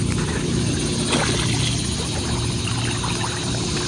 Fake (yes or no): no